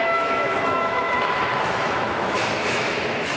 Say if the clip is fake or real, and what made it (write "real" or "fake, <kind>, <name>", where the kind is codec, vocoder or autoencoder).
fake, autoencoder, DAC-VAE